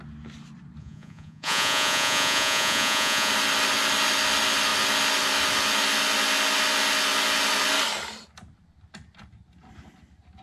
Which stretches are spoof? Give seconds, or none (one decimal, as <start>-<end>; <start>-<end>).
0.8-3.3